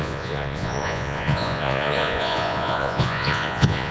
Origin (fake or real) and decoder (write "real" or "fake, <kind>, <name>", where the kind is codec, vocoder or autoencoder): fake, vocoder, Vocos